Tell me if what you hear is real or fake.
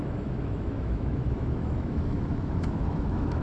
fake